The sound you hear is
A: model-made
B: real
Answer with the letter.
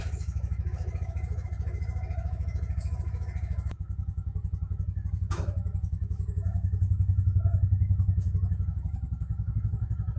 A